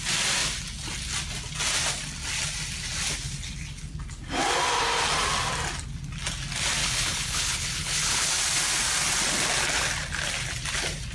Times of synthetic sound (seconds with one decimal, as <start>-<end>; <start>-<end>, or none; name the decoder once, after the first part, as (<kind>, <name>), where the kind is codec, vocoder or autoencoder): 6.8-8.3 (codec, HILCodec)